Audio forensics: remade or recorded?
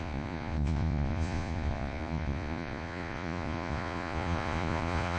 remade